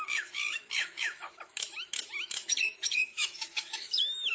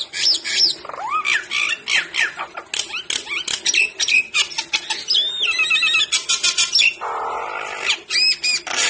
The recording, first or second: second